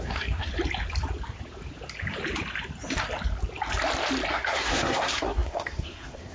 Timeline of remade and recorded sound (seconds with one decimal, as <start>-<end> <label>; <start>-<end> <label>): 0.0-0.5 remade; 0.5-4.3 recorded; 4.3-6.3 remade

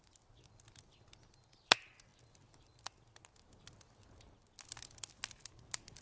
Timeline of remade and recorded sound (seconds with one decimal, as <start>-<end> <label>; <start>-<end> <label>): 0.0-6.0 recorded